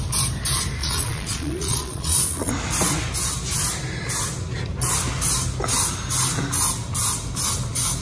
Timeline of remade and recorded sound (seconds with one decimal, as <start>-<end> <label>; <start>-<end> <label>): 0.0-0.8 recorded; 0.8-2.5 remade; 2.5-8.0 recorded